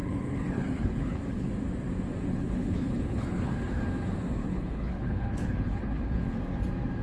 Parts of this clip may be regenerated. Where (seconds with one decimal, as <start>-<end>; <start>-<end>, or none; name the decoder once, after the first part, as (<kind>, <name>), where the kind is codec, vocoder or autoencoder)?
0.0-1.5 (codec, HILCodec); 2.3-3.8; 4.4-6.4